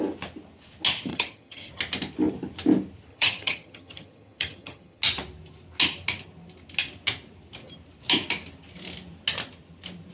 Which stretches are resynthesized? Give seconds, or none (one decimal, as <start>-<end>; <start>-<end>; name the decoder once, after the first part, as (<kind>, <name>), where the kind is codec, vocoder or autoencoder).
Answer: 1.1-1.7 (vocoder, HiFi-GAN); 3.1-5.0